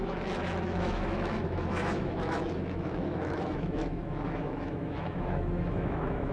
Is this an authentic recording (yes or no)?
no